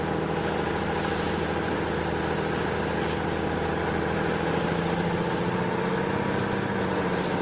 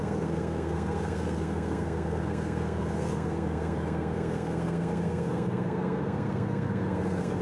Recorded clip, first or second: first